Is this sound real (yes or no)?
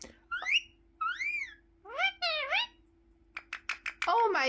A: yes